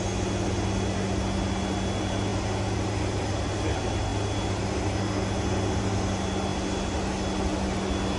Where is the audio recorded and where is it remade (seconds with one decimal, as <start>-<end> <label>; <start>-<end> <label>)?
0.0-8.2 recorded

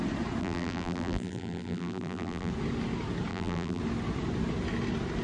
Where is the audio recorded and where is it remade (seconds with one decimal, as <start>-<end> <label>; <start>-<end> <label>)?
0.0-0.4 recorded; 0.4-2.5 remade; 2.5-3.3 recorded; 3.3-3.8 remade; 3.8-5.2 recorded

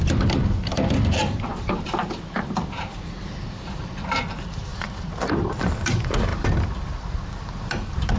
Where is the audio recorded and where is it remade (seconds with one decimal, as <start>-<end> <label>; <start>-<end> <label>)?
0.0-8.2 remade

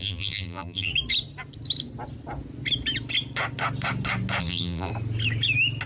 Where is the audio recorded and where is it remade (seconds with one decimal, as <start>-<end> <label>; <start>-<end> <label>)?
0.0-0.9 remade; 0.9-4.4 recorded; 4.4-4.9 remade; 4.9-5.9 recorded

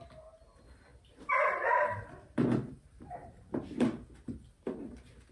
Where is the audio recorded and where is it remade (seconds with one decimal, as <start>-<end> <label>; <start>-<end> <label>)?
0.0-0.9 recorded; 0.9-4.1 remade; 4.1-5.3 recorded

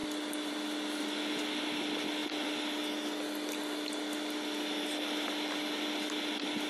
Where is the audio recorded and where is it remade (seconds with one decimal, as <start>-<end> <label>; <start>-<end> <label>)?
0.0-6.7 recorded

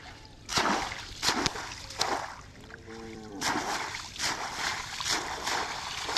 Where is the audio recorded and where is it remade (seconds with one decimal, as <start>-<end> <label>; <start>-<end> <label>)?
0.0-0.5 recorded; 0.5-2.0 remade; 2.0-2.5 recorded; 2.5-5.5 remade; 5.5-6.2 recorded